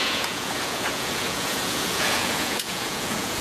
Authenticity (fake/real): fake